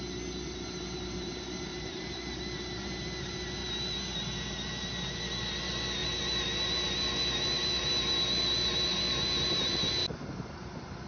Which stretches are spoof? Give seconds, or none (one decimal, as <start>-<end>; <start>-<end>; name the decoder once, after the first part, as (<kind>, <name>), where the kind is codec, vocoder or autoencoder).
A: 1.7-2.4 (vocoder, BigVGAN v2)